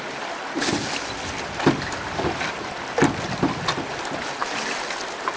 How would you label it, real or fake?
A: real